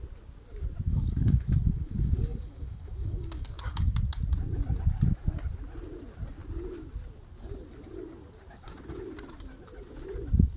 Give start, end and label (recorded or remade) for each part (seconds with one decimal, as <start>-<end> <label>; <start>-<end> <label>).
0.0-0.9 recorded; 0.9-4.0 remade; 4.0-10.6 recorded